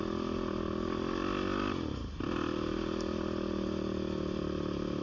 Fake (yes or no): no